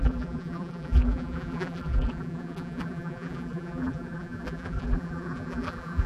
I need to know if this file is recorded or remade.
remade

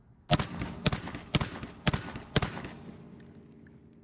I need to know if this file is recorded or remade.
recorded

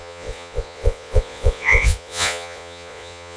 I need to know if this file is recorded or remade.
remade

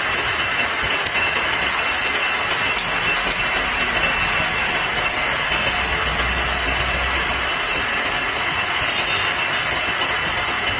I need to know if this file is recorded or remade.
recorded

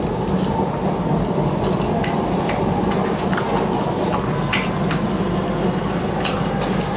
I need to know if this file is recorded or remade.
recorded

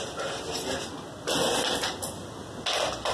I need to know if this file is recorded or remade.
recorded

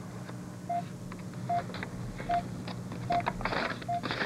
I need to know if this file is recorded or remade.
recorded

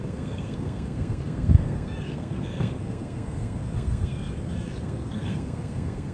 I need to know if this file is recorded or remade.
remade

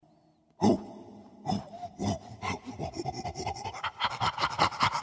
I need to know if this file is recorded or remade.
recorded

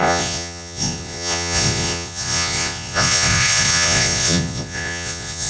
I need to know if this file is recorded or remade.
remade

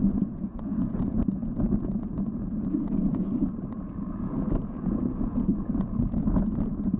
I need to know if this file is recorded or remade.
remade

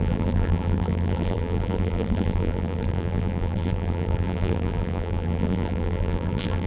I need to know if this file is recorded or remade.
remade